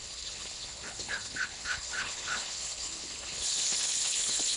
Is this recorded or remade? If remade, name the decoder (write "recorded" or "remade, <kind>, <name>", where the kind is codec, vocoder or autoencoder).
remade, codec, HILCodec